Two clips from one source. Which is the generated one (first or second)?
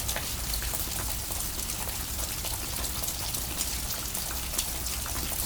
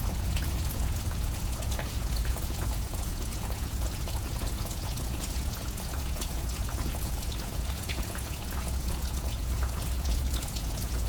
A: second